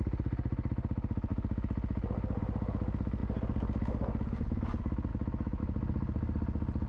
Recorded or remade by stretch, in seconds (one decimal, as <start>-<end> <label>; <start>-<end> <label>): 0.0-5.1 recorded; 5.1-5.6 remade; 5.6-6.9 recorded